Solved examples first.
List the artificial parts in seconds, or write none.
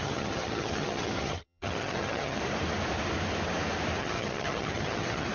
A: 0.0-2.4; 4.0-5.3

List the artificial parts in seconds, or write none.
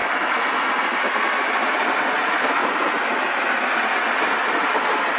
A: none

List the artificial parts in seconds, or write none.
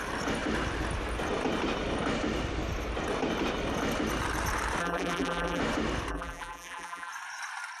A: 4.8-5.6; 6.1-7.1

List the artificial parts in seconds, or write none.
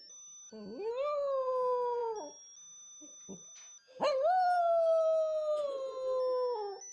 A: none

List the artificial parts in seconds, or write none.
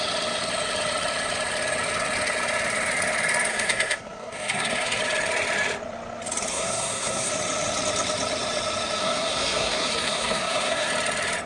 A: 3.5-5.0; 6.5-7.3; 9.0-10.9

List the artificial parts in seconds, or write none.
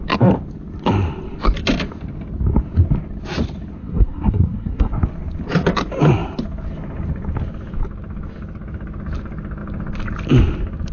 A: 3.8-4.9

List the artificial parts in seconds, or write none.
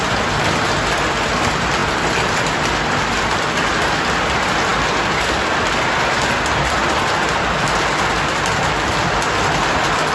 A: none